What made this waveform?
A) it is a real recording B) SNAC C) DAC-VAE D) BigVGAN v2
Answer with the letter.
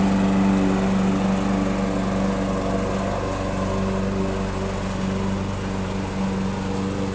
A